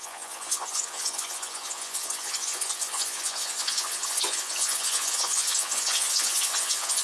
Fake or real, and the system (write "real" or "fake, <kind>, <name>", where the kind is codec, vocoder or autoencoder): fake, vocoder, Vocos